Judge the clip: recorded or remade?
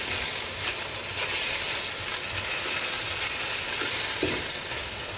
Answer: recorded